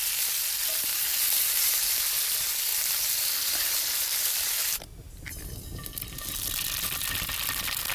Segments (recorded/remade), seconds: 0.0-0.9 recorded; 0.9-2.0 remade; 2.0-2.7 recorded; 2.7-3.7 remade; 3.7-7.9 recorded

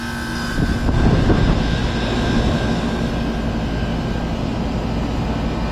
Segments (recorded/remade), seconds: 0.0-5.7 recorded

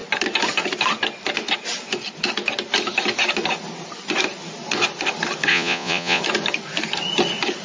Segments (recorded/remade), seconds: 0.0-5.5 recorded; 5.5-6.2 remade; 6.2-7.6 recorded